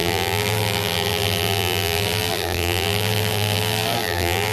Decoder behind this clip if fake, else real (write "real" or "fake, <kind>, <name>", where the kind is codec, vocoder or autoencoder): fake, vocoder, BigVGAN v2